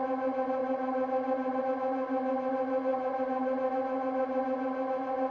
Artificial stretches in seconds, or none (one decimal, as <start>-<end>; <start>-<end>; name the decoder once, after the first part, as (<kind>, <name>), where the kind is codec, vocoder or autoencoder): 0.6-1.6 (vocoder, BigVGAN v2); 2.9-3.7